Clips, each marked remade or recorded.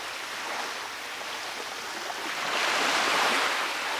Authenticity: recorded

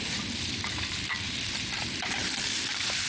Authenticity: remade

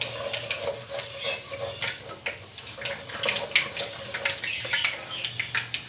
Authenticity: recorded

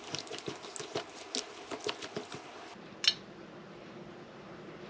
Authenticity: recorded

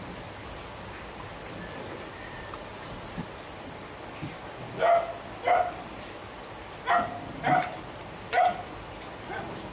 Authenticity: recorded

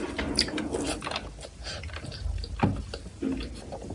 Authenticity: recorded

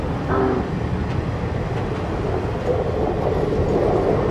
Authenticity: recorded